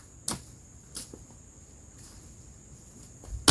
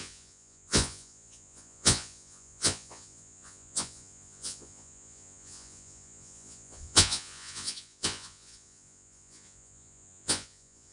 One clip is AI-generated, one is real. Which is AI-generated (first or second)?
second